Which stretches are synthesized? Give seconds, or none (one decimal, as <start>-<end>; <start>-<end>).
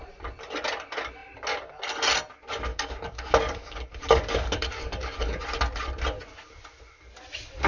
2.7-5.4